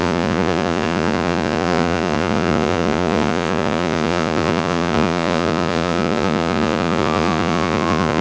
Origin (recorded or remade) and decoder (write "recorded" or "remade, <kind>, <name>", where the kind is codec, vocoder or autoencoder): remade, vocoder, Vocos